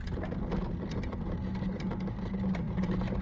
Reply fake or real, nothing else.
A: real